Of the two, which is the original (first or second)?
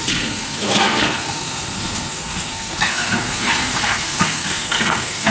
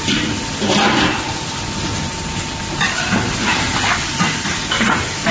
second